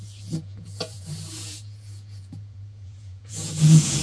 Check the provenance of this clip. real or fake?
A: fake